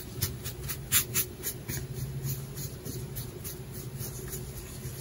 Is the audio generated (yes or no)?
no